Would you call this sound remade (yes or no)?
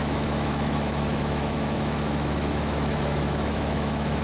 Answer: yes